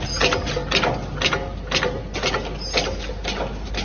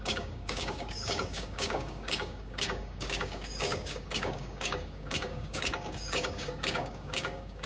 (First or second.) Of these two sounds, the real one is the first